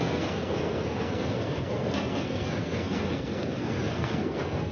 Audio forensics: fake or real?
fake